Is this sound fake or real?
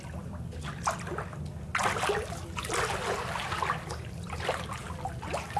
real